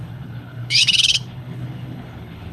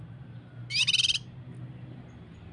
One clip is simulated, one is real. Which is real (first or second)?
second